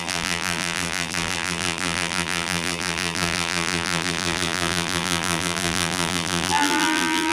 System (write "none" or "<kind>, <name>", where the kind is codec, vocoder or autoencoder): vocoder, BigVGAN v2